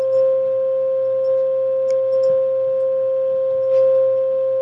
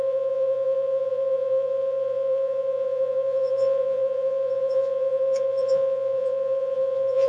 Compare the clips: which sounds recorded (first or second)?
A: first